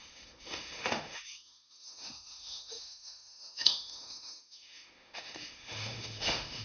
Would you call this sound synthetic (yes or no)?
yes